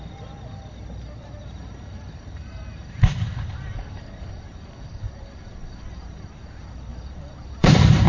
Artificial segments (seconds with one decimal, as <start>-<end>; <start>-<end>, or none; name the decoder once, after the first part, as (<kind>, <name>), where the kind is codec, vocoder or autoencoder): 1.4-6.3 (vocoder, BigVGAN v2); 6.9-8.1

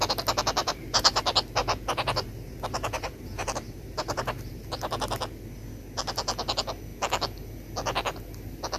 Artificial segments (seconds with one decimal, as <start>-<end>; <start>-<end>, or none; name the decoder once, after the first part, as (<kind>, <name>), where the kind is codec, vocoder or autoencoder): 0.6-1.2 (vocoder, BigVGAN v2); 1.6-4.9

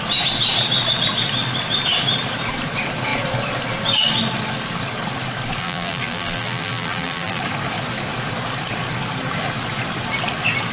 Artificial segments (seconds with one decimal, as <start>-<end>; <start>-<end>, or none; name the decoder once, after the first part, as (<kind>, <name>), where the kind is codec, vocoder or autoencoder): 5.6-7.4 (vocoder, BigVGAN v2)

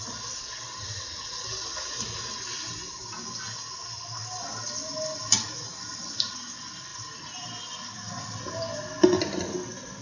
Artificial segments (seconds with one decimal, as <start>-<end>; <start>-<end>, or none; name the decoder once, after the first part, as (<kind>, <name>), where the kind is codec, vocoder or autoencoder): 5.7-6.3 (vocoder, BigVGAN v2); 6.9-8.4

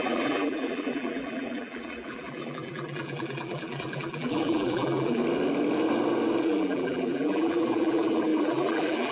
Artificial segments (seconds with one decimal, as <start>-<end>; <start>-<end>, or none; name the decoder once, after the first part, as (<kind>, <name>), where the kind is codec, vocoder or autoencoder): 0.0-5.2 (vocoder, BigVGAN v2); 6.4-9.1

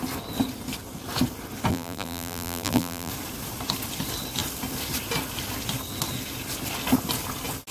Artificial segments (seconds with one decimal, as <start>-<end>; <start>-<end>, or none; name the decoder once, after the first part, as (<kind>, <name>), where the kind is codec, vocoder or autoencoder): 1.7-3.1 (vocoder, BigVGAN v2)

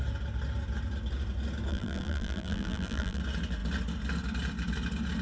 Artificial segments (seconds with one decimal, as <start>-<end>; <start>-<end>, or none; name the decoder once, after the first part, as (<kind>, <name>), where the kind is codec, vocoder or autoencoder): 1.7-3.2 (vocoder, BigVGAN v2)

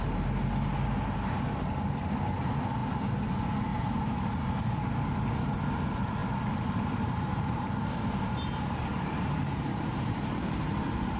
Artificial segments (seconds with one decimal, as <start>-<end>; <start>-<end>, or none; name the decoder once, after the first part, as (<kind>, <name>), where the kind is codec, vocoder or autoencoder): 2.8-3.3 (vocoder, BigVGAN v2); 3.7-4.6; 6.2-11.2